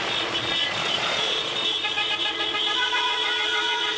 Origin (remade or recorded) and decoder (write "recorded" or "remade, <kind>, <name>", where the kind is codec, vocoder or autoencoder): remade, vocoder, Vocos